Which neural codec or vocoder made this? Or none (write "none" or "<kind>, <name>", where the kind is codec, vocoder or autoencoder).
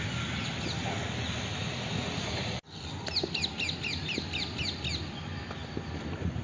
none